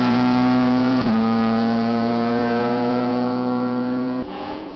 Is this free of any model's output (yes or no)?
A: no